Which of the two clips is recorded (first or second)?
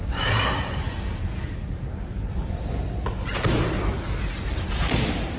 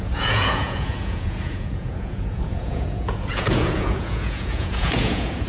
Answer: first